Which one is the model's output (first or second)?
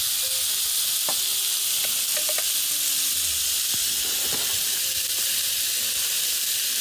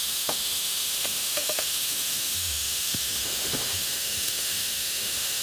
second